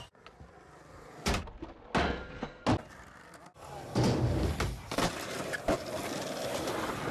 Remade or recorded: recorded